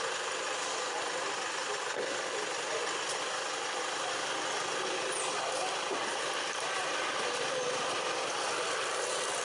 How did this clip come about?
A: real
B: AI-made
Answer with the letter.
A